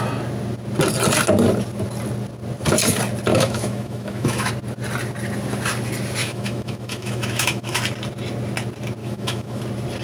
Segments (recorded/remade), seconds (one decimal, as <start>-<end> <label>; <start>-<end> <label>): 0.0-3.3 recorded; 3.3-4.5 remade; 4.5-6.2 recorded; 6.2-7.8 remade; 7.8-9.0 recorded; 9.0-9.6 remade; 9.6-10.0 recorded